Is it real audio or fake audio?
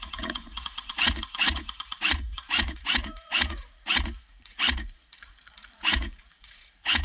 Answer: fake